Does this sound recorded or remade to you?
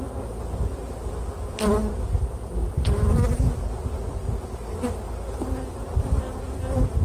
recorded